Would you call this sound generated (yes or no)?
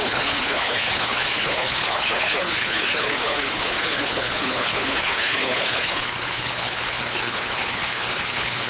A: yes